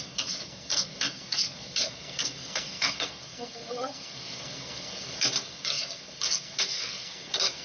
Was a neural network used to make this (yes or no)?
yes